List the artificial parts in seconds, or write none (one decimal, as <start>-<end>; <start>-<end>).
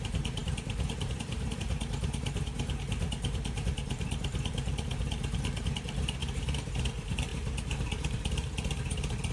0.0-9.3